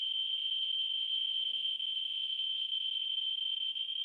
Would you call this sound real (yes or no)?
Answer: yes